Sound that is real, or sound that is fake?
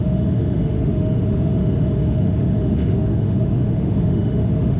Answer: fake